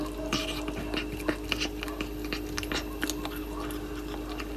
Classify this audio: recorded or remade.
recorded